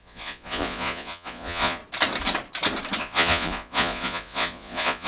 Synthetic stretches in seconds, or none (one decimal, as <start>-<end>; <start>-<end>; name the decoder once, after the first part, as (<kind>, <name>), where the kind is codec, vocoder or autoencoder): 0.0-1.8 (vocoder, Vocos); 3.0-5.1